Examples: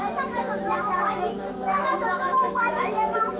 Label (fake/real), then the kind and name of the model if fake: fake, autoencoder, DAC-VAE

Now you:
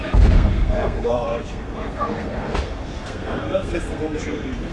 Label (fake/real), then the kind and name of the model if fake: fake, codec, SNAC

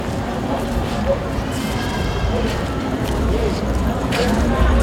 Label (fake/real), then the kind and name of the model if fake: fake, vocoder, BigVGAN v2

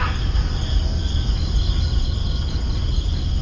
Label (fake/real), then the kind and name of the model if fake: real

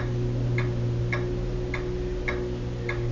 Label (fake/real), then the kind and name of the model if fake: real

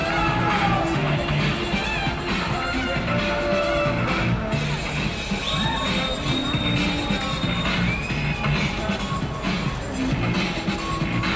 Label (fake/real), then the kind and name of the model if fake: real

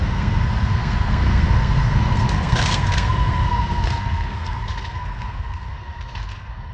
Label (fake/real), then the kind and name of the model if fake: fake, codec, SNAC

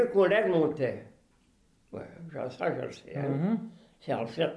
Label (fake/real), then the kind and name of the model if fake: real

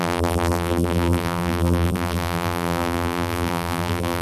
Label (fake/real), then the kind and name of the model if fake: fake, vocoder, BigVGAN v2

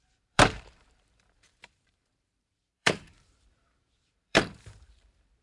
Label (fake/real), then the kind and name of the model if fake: fake, vocoder, BigVGAN v2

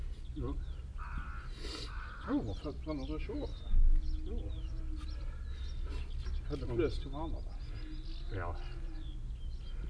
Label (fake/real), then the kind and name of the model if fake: real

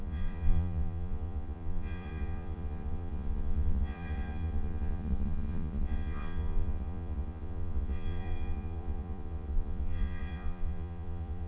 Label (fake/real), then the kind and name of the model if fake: fake, vocoder, Vocos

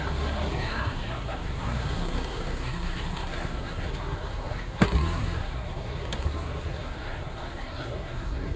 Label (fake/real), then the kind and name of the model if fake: fake, codec, SNAC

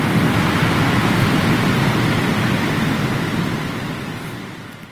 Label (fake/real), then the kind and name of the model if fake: real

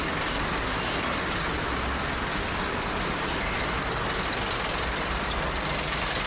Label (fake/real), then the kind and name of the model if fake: real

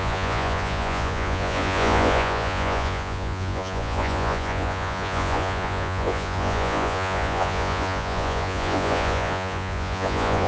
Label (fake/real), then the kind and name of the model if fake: fake, vocoder, Vocos